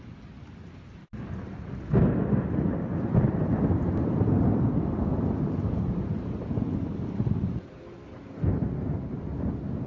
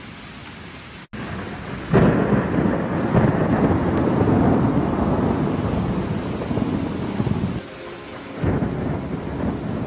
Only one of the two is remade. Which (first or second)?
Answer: first